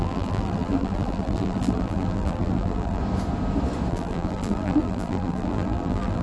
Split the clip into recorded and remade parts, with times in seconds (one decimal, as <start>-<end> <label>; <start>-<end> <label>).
0.0-3.0 remade; 3.0-3.9 recorded; 3.9-6.2 remade